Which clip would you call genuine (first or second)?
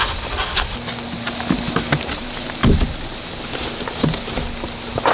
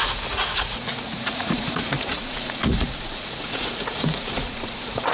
first